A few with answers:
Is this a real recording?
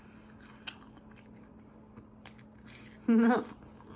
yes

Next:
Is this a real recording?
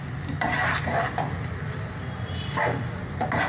yes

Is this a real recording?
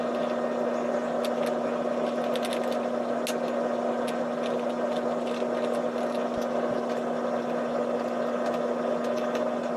yes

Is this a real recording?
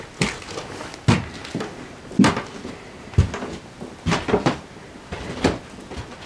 yes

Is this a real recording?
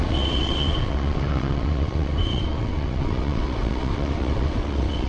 no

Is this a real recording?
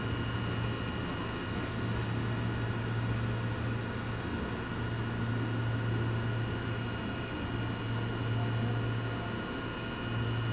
yes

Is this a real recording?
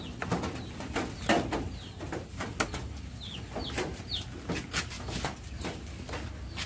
yes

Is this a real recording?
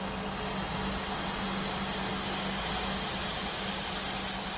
yes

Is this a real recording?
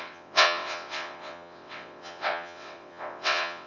no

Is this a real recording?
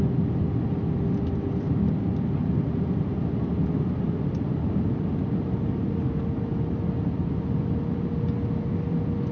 yes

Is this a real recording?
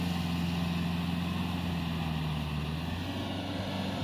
yes